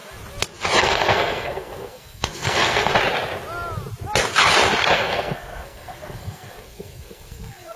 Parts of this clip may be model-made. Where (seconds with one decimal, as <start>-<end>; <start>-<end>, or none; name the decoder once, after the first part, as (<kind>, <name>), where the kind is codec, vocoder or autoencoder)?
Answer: 0.8-2.9 (codec, SNAC); 4.9-7.8